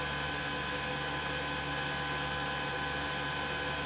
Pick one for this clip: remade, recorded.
recorded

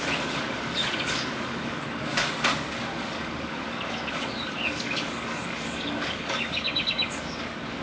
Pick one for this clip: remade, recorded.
remade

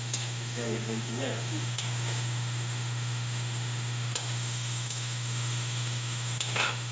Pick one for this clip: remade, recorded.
remade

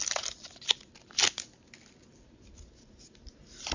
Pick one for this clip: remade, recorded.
recorded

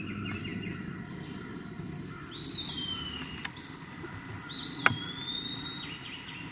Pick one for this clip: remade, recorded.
recorded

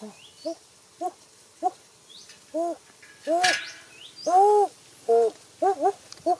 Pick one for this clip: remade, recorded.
recorded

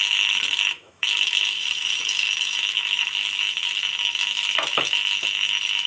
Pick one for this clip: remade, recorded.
remade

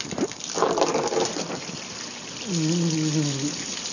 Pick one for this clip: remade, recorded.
recorded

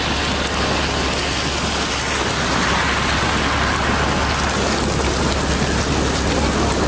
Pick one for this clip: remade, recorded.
recorded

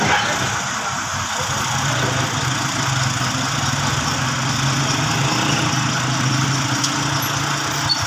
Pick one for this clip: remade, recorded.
recorded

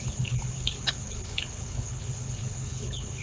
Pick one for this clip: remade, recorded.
remade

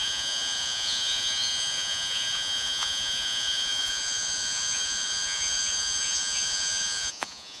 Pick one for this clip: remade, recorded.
remade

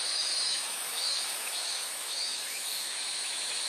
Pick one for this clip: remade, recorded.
remade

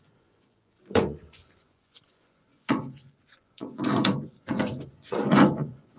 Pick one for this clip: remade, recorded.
remade